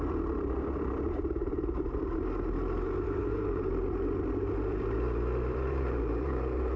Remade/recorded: remade